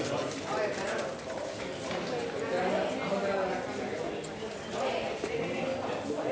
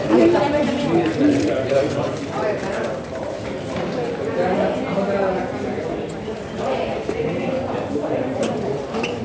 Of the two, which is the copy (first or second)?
second